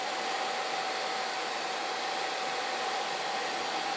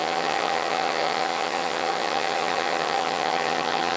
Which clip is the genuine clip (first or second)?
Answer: first